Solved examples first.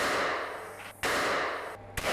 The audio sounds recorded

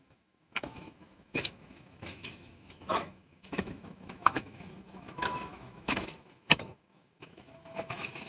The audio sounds remade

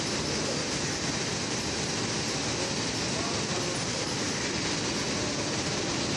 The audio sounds recorded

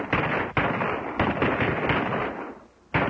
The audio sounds recorded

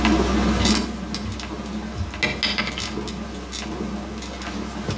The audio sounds recorded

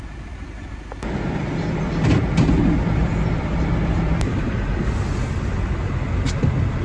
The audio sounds recorded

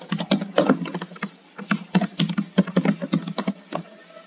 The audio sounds recorded